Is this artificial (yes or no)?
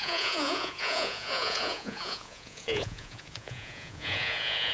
yes